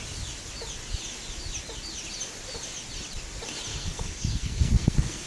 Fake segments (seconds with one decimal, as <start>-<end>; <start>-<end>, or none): 3.7-5.3